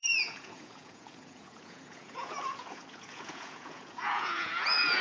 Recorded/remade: remade